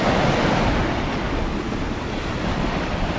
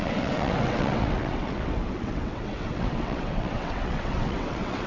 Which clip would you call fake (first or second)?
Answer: second